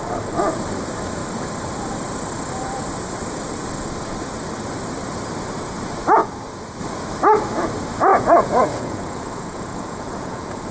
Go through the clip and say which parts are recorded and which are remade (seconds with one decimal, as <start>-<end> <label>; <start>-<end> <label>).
0.0-8.1 recorded; 8.1-10.7 remade